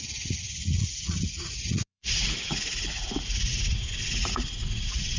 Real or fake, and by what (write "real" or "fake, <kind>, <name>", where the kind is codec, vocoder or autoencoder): fake, vocoder, Vocos